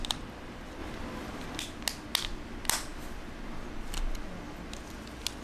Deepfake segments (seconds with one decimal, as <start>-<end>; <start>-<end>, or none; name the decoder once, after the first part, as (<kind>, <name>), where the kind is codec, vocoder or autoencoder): none